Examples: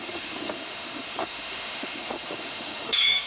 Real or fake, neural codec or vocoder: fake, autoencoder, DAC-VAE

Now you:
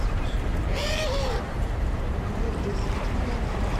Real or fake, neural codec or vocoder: fake, vocoder, BigVGAN v2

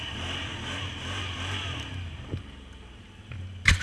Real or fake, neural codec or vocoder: real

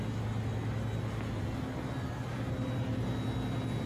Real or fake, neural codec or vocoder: real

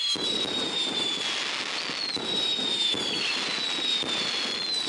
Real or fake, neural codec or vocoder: real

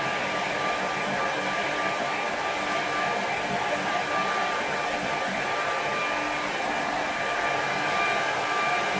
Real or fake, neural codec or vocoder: real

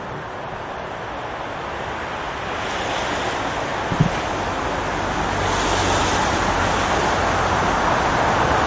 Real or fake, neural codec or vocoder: real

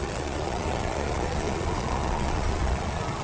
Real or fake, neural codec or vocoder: fake, vocoder, Vocos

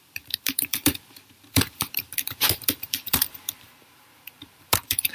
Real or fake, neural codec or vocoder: fake, vocoder, BigVGAN v2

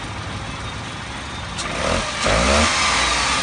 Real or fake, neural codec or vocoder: real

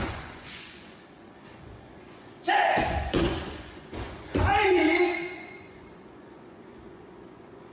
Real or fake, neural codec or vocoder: fake, vocoder, Vocos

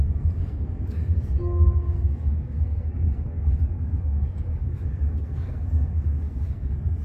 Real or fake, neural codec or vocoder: fake, codec, SNAC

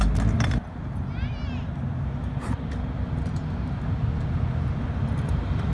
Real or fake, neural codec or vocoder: real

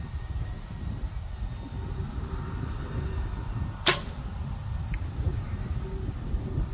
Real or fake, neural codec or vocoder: real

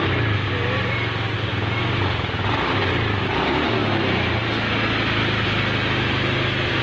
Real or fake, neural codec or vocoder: real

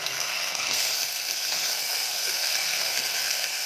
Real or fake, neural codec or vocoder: fake, codec, SNAC